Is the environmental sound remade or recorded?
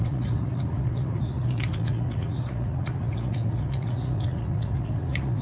remade